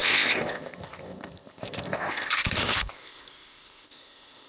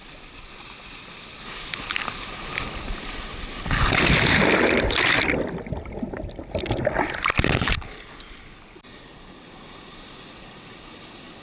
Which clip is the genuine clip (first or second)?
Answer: second